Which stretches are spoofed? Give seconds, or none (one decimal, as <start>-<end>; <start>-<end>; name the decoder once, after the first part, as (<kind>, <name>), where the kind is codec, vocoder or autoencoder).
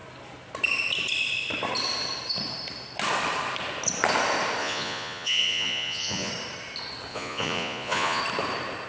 4.6-6.3 (vocoder, Vocos); 7.1-8.2